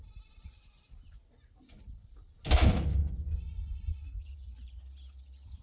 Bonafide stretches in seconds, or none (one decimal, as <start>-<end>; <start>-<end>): 0.0-3.0; 4.8-5.6